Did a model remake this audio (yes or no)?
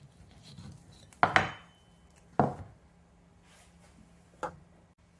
no